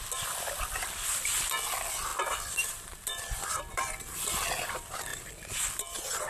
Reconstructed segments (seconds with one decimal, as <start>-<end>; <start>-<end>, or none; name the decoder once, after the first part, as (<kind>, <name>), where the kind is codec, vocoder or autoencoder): 2.1-2.7 (vocoder, BigVGAN v2); 3.1-4.3